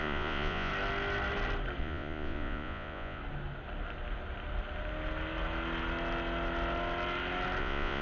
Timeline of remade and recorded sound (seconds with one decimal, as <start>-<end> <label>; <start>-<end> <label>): 0.0-0.7 remade; 0.7-1.8 recorded; 1.8-3.2 remade; 3.2-7.6 recorded; 7.6-8.0 remade